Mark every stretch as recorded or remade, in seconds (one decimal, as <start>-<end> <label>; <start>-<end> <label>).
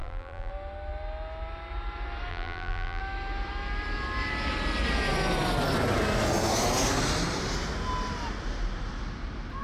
0.0-0.5 remade; 0.5-2.3 recorded; 2.3-3.0 remade; 3.0-9.6 recorded